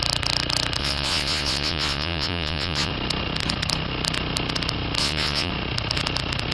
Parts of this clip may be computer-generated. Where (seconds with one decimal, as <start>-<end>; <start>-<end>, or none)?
0.8-2.9; 5.0-5.5